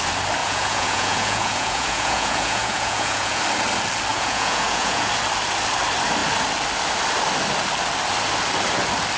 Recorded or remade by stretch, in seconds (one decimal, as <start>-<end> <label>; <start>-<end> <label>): 0.0-0.4 recorded; 0.4-3.4 remade; 3.4-4.1 recorded; 4.1-5.1 remade; 5.1-9.2 recorded